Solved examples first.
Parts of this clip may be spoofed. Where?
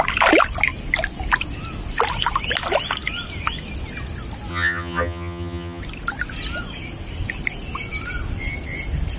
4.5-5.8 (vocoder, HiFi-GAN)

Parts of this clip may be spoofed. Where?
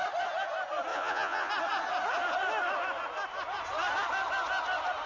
0.9-1.5 (vocoder, Vocos)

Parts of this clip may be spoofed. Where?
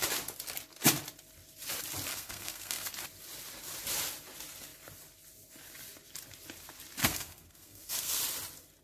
2.1-2.9 (codec, SNAC); 7.0-8.2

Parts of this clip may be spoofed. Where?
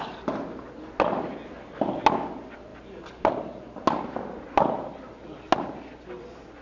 none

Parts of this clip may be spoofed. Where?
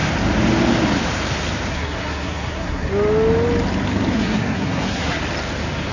1.7-2.9 (codec, SNAC); 4.1-5.2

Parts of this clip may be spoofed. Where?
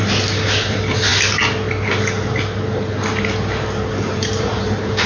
0.7-1.1 (vocoder, BigVGAN v2); 3.9-5.1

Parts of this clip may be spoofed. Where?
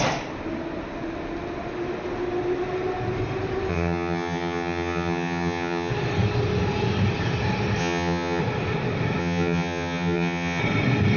3.7-5.9 (vocoder, HiFi-GAN); 7.8-8.4; 9.2-10.6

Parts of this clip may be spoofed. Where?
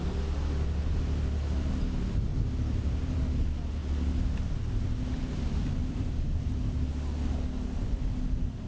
2.3-3.2 (vocoder, BigVGAN v2); 3.8-5.2; 5.8-6.9